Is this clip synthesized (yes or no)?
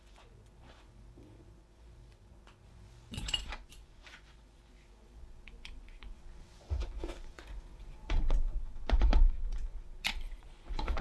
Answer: yes